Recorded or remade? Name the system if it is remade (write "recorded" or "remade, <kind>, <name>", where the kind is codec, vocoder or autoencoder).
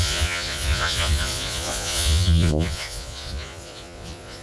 remade, vocoder, Vocos